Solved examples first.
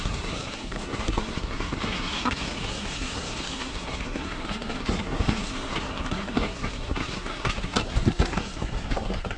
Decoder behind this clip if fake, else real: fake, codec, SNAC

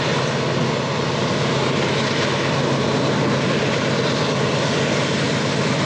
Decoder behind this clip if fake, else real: real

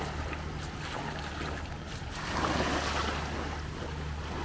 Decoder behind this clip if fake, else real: real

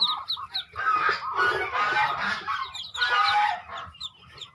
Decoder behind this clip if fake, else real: real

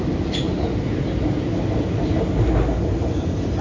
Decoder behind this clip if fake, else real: real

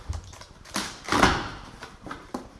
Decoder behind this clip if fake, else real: fake, vocoder, BigVGAN v2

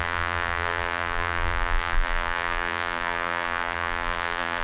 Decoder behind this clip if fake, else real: fake, vocoder, BigVGAN v2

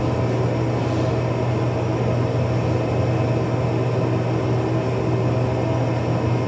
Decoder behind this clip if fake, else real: real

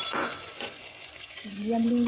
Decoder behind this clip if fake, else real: fake, vocoder, Vocos